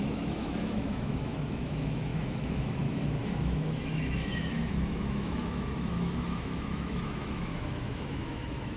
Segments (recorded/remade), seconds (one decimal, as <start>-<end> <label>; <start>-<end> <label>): 0.0-8.8 remade